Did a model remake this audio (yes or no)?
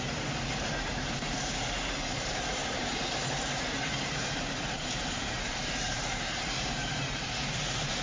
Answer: yes